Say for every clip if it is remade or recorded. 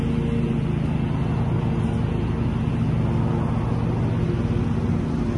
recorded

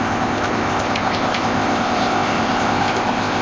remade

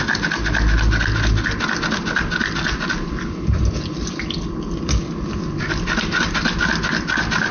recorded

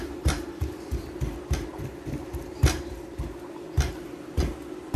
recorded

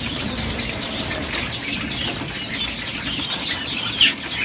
recorded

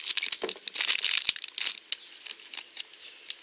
recorded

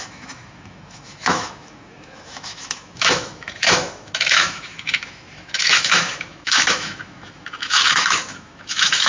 remade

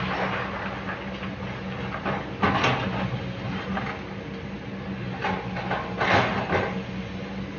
recorded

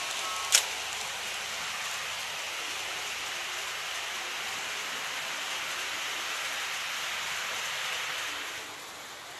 recorded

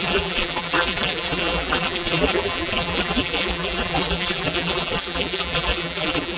remade